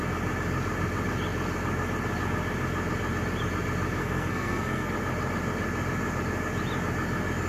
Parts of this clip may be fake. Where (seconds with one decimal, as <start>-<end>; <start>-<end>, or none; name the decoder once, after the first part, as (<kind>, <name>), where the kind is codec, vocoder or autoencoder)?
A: 4.0-4.9 (codec, SNAC)